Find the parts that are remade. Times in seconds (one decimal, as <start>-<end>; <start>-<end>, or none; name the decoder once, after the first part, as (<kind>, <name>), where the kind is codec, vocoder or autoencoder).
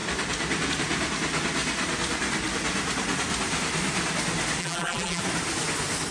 4.6-5.2 (vocoder, BigVGAN v2)